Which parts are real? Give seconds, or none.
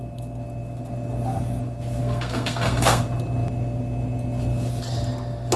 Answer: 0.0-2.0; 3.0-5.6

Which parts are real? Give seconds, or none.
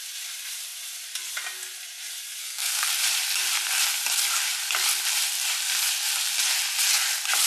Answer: 0.0-2.4; 2.9-7.5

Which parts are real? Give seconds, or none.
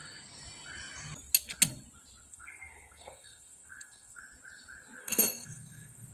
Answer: 0.0-2.3; 4.2-5.0